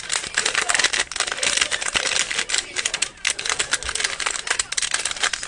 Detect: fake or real real